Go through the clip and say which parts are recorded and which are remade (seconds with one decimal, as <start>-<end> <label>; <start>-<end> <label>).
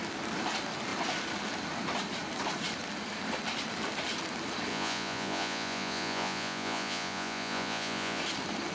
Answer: 0.0-4.7 recorded; 4.7-8.2 remade; 8.2-8.7 recorded